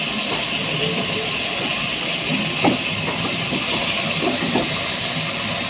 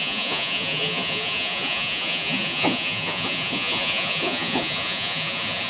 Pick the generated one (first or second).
second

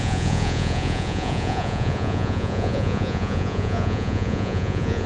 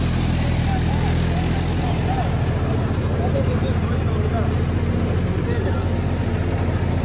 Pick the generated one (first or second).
first